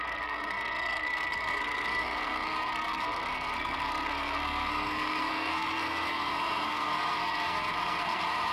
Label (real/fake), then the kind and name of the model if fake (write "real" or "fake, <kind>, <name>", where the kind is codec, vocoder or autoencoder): fake, codec, SNAC